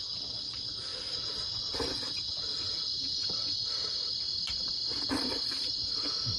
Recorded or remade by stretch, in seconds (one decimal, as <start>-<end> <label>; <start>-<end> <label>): 0.0-6.4 recorded